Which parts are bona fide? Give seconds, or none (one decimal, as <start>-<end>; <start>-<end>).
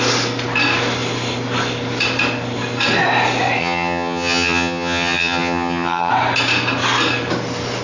0.0-3.6; 6.1-7.8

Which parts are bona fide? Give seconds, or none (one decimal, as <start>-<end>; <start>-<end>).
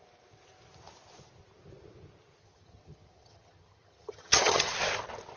0.0-2.4; 4.7-5.4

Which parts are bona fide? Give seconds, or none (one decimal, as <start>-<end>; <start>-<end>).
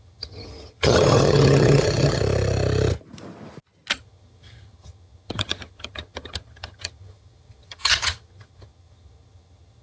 2.2-4.0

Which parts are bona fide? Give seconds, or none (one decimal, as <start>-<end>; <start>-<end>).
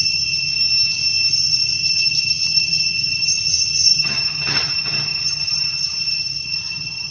0.5-1.3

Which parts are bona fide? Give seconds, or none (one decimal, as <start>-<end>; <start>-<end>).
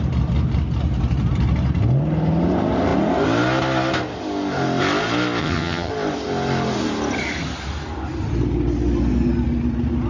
0.0-5.4; 5.9-10.1